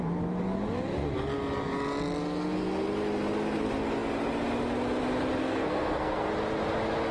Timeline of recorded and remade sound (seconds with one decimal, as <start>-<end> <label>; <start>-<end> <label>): 0.0-5.4 recorded; 5.4-6.3 remade; 6.3-7.1 recorded